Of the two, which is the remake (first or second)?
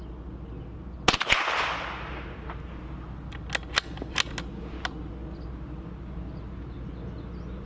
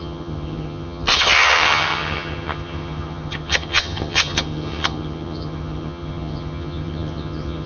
second